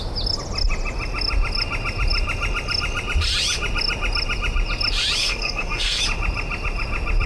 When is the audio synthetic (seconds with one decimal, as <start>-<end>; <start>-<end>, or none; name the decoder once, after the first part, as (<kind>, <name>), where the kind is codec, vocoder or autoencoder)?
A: 5.2-6.0 (codec, SNAC)